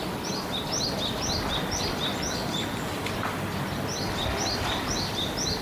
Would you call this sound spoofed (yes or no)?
no